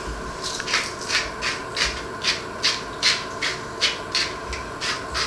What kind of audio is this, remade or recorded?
recorded